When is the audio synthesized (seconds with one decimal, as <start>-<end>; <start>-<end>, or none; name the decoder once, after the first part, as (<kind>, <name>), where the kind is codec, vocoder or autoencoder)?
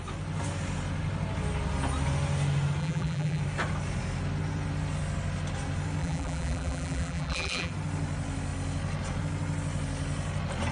2.8-3.4 (vocoder, BigVGAN v2); 6.0-7.7